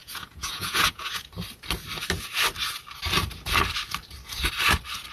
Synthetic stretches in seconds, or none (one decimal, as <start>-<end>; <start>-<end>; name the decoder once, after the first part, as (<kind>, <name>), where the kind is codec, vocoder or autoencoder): 0.0-1.3 (vocoder, Vocos)